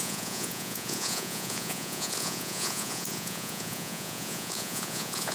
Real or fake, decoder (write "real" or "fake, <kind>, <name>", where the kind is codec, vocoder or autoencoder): fake, vocoder, Vocos